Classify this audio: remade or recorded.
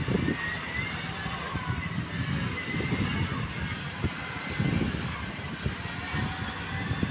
recorded